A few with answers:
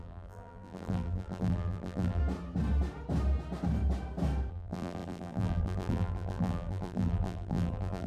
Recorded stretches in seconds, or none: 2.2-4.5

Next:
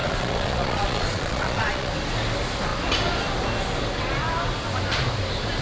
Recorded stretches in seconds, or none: 1.9-5.6

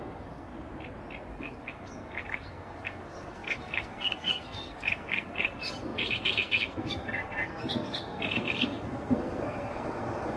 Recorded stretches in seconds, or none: 0.5-1.3

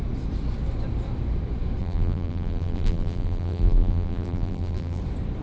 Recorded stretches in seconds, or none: 0.0-1.8; 5.0-5.4

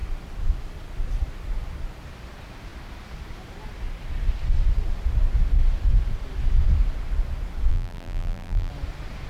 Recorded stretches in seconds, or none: 0.0-7.7; 8.7-9.3

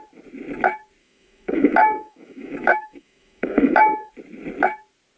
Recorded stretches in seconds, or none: 0.0-1.0; 4.1-5.2

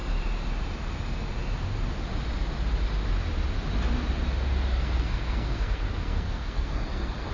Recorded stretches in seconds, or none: 0.0-4.7

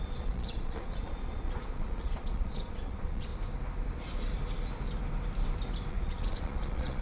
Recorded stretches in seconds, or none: 3.3-5.9